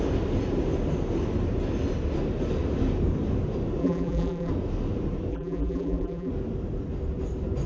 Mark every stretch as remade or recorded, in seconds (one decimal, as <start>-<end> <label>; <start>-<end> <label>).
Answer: 0.0-3.8 recorded; 3.8-4.5 remade; 4.5-5.3 recorded; 5.3-6.3 remade; 6.3-7.7 recorded